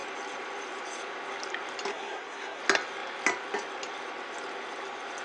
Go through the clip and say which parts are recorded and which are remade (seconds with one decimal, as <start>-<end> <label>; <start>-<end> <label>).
0.0-1.9 recorded; 1.9-2.6 remade; 2.6-5.2 recorded